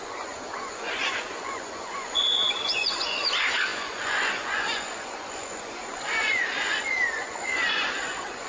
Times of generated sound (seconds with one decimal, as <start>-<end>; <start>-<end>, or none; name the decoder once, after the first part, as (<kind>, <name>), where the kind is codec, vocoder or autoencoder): 0.0-8.5 (vocoder, Vocos)